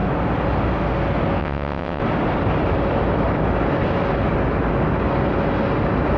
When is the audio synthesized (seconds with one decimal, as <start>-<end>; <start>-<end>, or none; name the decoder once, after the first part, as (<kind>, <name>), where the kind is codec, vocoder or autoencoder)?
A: 1.4-2.0 (vocoder, WaveNeXt)